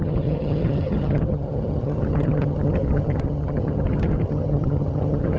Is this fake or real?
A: fake